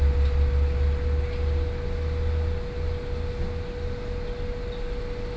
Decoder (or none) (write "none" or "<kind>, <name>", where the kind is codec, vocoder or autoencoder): none